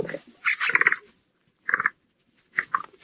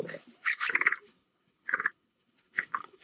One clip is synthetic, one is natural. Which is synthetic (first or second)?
second